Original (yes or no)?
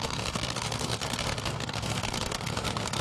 no